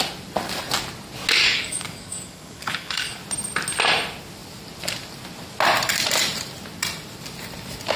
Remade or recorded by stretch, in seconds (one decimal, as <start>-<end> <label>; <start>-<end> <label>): 0.0-1.4 recorded; 1.4-3.2 remade; 3.2-8.0 recorded